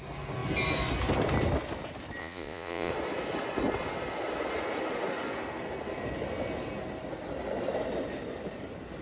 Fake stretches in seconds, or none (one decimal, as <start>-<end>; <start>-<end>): 2.2-2.9